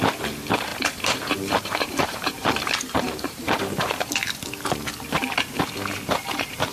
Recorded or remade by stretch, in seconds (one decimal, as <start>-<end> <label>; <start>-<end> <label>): 0.0-0.7 recorded; 0.7-4.1 remade; 4.1-6.7 recorded